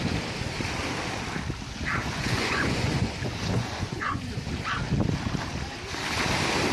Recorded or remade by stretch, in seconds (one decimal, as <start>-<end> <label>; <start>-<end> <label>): 0.0-2.0 recorded; 2.0-4.3 remade; 4.3-6.7 recorded